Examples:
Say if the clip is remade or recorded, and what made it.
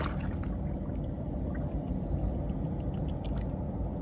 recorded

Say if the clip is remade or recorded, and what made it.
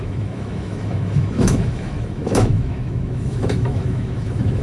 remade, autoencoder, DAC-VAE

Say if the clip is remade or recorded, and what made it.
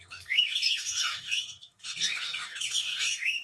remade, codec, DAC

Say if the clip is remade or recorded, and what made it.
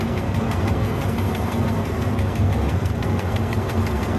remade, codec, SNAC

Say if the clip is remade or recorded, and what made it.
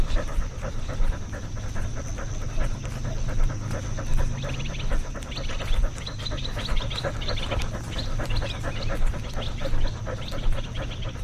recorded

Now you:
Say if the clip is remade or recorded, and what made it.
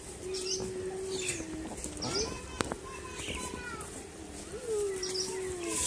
recorded